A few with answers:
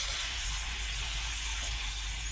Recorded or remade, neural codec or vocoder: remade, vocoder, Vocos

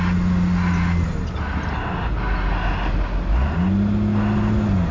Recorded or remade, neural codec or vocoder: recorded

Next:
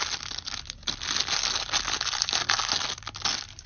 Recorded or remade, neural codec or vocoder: recorded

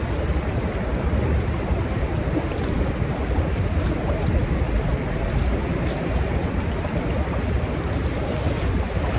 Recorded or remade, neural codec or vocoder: recorded